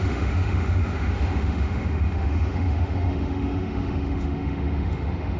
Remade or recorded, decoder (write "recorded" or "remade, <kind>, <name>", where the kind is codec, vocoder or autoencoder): remade, autoencoder, DAC-VAE